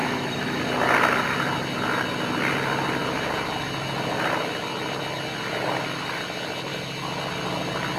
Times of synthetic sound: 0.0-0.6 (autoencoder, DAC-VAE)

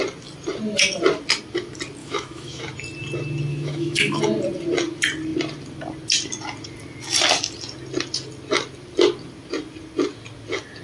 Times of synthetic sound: 2.0-2.6 (autoencoder, DAC-VAE); 3.5-4.2

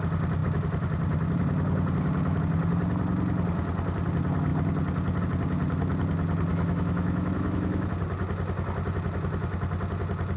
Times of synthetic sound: 6.5-7.9 (autoencoder, DAC-VAE)